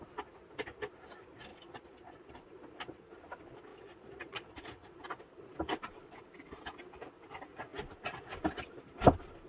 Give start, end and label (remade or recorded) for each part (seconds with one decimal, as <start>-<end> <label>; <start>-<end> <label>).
0.0-1.5 recorded; 1.5-3.2 remade; 3.2-3.7 recorded; 3.7-5.0 remade; 5.0-9.5 recorded